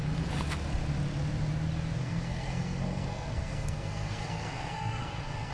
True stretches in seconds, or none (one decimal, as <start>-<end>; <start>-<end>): 0.0-2.0